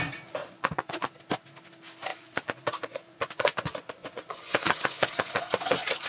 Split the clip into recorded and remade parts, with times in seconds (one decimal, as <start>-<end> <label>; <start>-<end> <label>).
0.0-0.4 recorded; 0.4-1.1 remade; 1.1-2.1 recorded; 2.1-6.1 remade